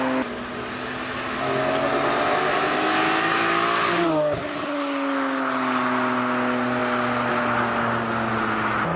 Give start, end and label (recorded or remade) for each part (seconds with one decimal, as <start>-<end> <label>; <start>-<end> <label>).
0.0-9.0 recorded